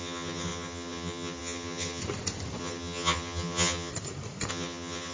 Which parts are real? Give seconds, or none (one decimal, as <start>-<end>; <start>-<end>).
2.0-2.6; 3.9-4.5